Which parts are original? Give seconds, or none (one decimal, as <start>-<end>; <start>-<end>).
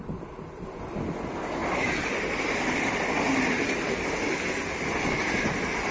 0.0-5.9